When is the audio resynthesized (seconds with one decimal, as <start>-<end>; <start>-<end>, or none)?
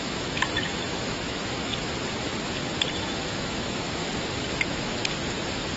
0.0-1.7; 2.9-4.0; 4.6-5.0